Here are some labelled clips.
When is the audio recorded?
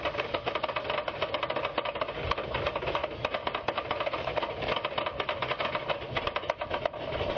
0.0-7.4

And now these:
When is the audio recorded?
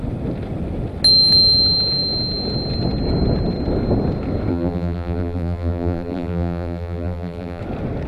0.0-4.5; 7.6-8.1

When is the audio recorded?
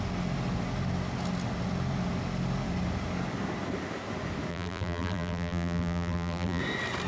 0.0-4.5; 6.6-7.1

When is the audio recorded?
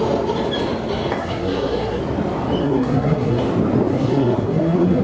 0.0-1.2; 2.0-2.6; 3.4-3.9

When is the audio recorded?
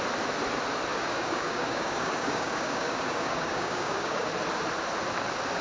0.0-0.9; 4.3-5.6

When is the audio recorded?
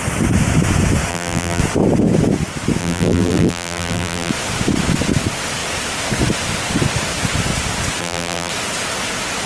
0.0-1.1; 1.6-2.8; 4.3-8.0; 8.5-9.5